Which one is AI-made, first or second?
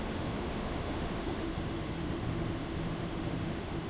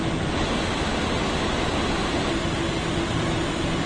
first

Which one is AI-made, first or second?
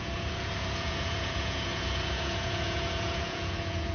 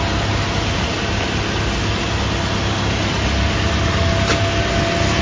first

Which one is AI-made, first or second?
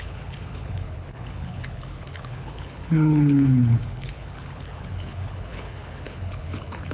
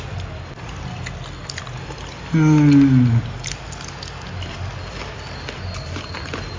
first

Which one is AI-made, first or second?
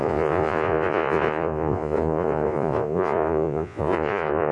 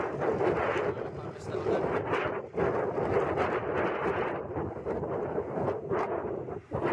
first